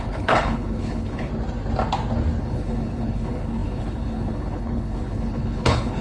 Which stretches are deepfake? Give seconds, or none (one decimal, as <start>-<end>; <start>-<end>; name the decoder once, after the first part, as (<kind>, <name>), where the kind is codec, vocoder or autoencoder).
0.0-1.3 (codec, HILCodec); 2.4-6.0